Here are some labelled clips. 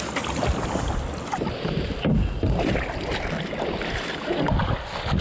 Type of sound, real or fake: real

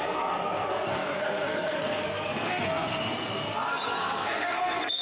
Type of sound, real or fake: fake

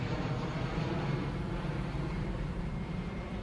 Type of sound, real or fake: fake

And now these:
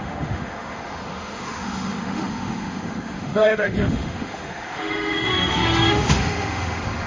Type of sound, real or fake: fake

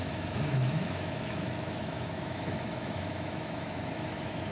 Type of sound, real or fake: fake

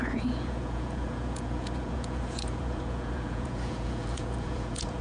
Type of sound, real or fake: fake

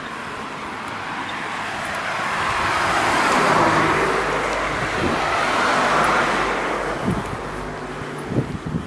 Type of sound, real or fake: real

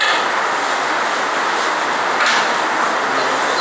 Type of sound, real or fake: real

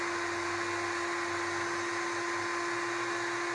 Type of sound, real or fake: real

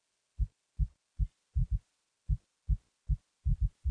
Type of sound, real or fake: real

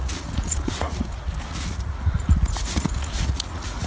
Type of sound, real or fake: fake